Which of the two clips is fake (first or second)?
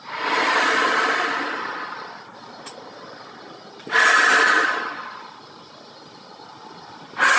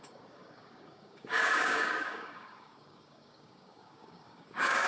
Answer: second